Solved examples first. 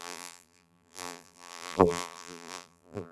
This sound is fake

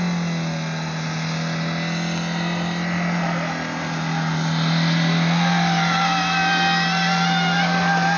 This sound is real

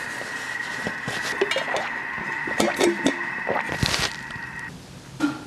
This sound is real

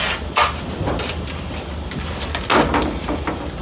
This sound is real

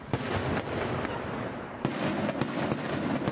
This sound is real